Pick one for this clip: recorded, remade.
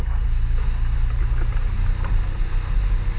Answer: recorded